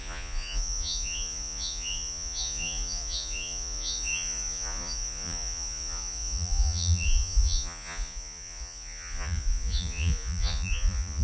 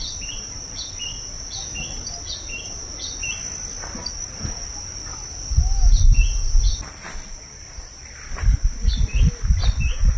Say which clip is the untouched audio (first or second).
second